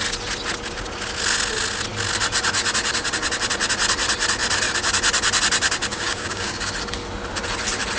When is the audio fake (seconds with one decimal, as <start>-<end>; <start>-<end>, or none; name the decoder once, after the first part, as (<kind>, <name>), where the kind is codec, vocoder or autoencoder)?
5.9-6.7 (codec, DAC)